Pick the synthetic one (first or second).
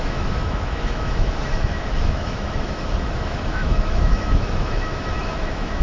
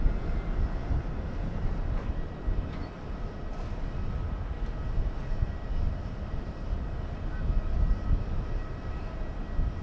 first